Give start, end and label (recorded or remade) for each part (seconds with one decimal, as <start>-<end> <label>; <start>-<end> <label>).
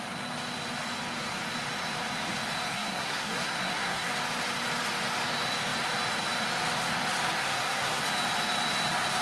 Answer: 0.0-2.7 recorded; 2.7-4.1 remade; 4.1-7.4 recorded; 7.4-8.0 remade; 8.0-9.2 recorded